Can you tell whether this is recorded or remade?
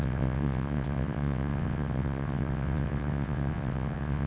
remade